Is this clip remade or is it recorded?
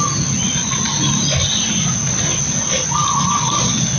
recorded